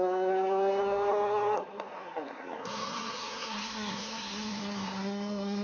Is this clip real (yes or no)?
no